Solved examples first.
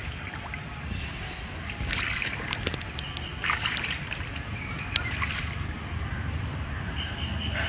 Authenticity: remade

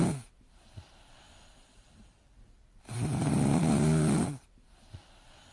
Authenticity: remade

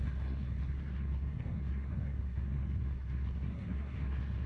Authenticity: remade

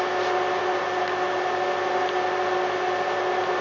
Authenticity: recorded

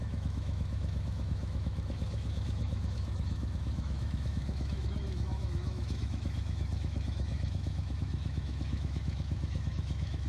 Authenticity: remade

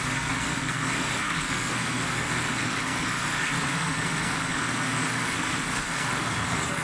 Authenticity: remade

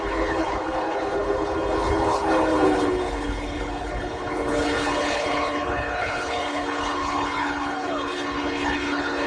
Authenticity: remade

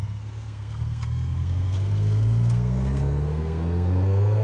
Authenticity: remade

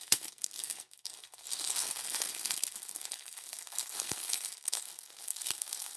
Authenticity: remade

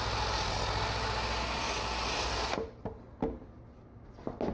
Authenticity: recorded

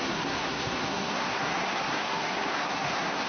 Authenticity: remade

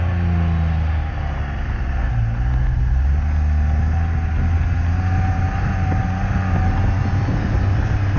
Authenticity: recorded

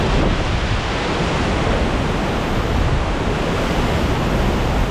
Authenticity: recorded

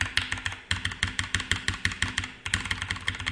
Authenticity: recorded